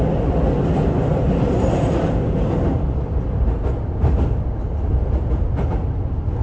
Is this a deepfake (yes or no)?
no